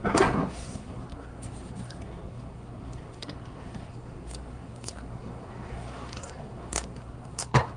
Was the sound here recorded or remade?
remade